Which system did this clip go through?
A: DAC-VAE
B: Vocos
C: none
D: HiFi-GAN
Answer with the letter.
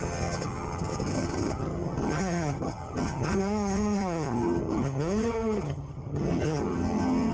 D